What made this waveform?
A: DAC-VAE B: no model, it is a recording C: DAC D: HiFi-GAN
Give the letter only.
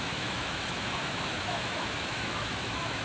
A